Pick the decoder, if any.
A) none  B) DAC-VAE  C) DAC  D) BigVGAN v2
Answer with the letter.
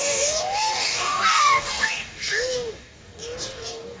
C